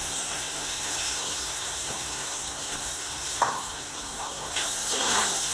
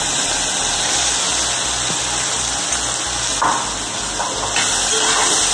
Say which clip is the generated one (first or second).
first